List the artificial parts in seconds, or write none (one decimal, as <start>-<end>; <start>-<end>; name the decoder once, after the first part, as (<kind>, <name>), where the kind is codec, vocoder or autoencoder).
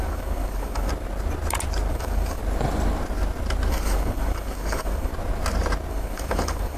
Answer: 0.0-0.9 (codec, DAC); 1.9-2.4; 3.7-5.1; 5.9-6.8